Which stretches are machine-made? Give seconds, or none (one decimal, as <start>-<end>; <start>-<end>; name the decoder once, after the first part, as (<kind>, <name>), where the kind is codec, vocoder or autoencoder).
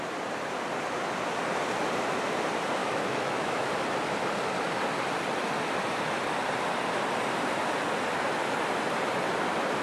2.8-3.7 (autoencoder, DAC-VAE)